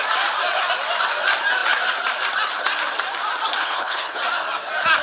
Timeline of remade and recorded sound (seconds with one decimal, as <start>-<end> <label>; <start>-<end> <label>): 0.0-3.6 recorded; 3.6-4.2 remade; 4.2-5.0 recorded